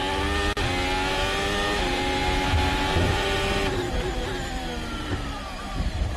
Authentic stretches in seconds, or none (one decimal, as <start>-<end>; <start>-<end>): 0.0-1.1